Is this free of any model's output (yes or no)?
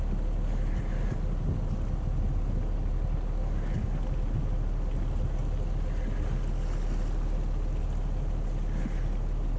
yes